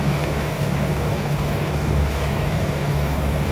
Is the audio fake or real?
fake